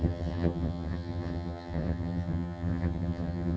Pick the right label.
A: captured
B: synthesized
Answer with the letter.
B